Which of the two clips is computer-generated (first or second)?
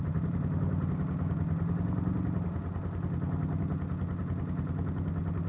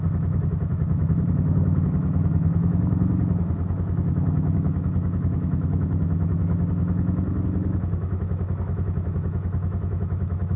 second